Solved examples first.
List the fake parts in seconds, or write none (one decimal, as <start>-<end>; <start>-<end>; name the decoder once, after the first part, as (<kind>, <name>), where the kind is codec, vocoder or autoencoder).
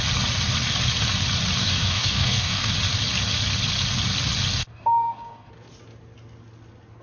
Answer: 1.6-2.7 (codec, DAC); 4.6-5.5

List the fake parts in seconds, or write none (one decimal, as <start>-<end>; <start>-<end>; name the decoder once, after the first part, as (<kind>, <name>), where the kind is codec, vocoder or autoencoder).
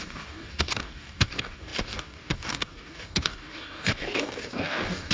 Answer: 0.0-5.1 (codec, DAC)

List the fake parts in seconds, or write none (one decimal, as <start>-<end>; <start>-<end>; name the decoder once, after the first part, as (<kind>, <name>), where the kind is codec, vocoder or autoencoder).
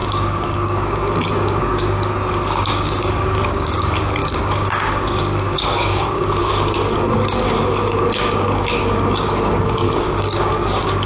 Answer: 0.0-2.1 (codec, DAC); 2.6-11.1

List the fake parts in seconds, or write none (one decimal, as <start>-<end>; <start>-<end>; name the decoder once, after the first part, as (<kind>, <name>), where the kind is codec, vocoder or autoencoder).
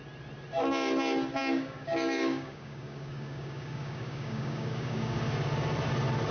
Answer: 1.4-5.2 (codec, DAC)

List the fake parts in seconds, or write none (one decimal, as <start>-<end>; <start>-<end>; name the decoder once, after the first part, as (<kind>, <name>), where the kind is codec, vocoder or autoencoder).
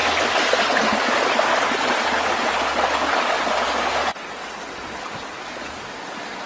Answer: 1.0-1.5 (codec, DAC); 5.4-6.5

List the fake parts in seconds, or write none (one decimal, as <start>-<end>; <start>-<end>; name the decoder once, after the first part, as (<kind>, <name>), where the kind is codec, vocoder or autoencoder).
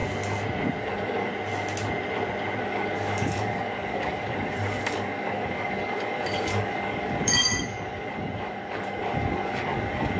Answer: 0.8-1.3 (codec, DAC); 2.6-10.2